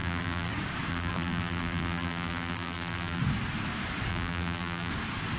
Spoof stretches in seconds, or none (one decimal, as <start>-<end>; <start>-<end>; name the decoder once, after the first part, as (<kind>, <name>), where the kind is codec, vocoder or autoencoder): 0.0-0.5 (vocoder, BigVGAN v2); 0.9-3.2; 4.1-4.9